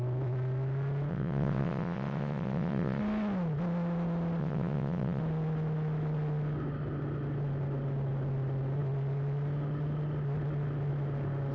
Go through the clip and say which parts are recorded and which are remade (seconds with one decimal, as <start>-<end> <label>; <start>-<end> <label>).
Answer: 0.0-1.1 recorded; 1.1-3.0 remade; 3.0-4.4 recorded; 4.4-5.2 remade; 5.2-11.5 recorded